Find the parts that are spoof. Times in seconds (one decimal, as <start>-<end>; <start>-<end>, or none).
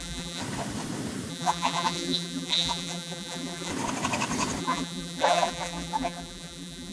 0.0-0.4; 1.3-3.7; 4.6-6.9